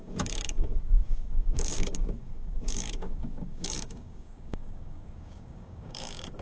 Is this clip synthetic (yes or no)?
yes